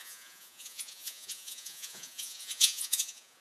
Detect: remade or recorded remade